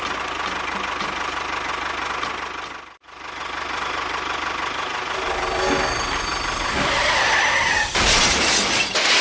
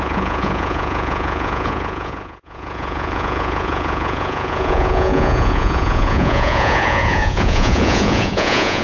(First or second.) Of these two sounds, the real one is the first